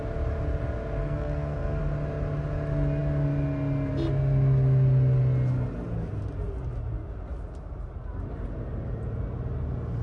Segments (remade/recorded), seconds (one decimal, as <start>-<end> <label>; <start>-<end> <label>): 0.0-1.0 recorded; 1.0-1.8 remade; 1.8-10.0 recorded